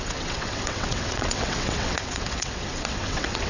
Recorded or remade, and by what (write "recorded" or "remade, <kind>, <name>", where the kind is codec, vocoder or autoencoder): remade, vocoder, WaveNeXt